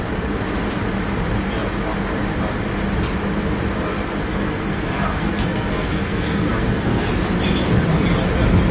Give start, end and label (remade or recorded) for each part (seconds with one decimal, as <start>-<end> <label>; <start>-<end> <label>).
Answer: 0.0-4.3 recorded; 4.3-7.1 remade; 7.1-8.7 recorded